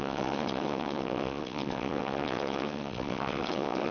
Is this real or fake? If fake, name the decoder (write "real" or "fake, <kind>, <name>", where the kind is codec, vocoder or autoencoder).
fake, vocoder, WaveNeXt